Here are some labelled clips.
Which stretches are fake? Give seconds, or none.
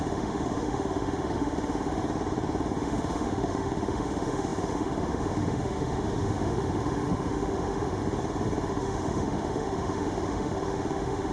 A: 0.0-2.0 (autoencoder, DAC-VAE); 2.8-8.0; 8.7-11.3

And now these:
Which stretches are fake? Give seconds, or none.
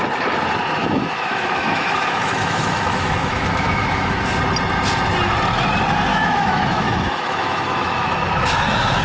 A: 0.8-4.3 (autoencoder, DAC-VAE); 6.1-9.0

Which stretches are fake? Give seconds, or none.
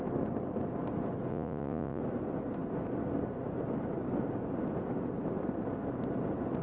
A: 1.3-2.0 (vocoder, Vocos)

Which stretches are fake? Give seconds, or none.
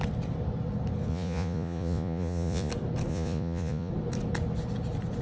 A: 1.1-2.7 (vocoder, Vocos); 3.1-3.9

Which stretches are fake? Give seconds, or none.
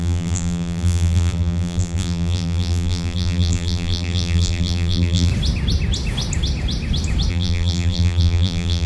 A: 0.0-5.3 (vocoder, BigVGAN v2); 7.3-8.9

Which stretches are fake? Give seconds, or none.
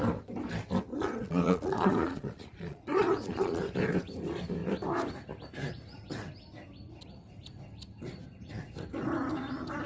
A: 0.9-3.6 (vocoder, Vocos)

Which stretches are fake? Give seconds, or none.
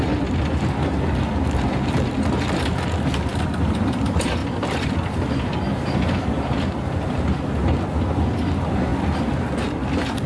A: 3.3-3.8 (vocoder, BigVGAN v2); 4.4-5.2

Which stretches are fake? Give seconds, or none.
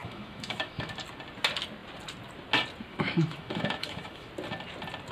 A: 0.0-0.9 (autoencoder, DAC-VAE); 2.9-4.3